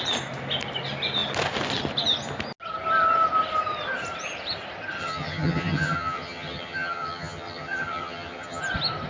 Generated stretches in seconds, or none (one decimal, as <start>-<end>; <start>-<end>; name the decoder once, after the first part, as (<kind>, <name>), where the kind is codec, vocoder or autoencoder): 5.0-8.6 (vocoder, HiFi-GAN)

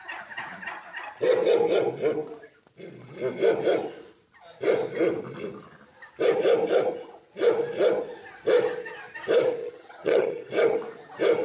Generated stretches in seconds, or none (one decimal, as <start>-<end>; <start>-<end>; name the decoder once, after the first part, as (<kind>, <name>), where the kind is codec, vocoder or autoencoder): 9.6-10.5 (vocoder, HiFi-GAN)

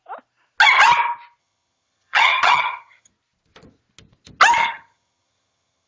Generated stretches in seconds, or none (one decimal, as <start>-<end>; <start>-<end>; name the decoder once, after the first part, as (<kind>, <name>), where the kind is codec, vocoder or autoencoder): 1.4-3.1 (vocoder, HiFi-GAN); 4.6-5.9

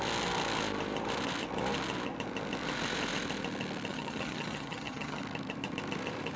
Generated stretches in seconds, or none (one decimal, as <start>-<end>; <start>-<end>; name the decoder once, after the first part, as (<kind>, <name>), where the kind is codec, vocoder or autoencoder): 3.9-5.2 (vocoder, HiFi-GAN)

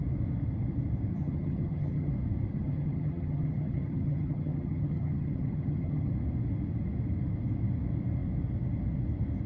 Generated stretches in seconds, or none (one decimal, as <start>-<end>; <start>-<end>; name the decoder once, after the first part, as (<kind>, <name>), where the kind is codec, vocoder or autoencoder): 1.1-2.1 (vocoder, HiFi-GAN); 2.5-6.1

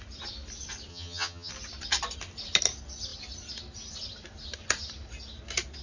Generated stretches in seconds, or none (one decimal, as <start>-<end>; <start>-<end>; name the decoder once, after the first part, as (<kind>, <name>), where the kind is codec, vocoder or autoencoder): 0.9-1.5 (vocoder, HiFi-GAN)

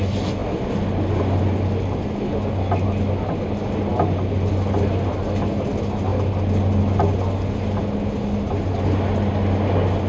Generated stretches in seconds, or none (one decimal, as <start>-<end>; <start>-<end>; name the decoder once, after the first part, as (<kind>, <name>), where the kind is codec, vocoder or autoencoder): none